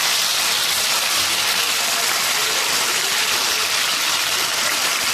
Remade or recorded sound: recorded